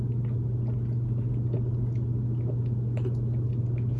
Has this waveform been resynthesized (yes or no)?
no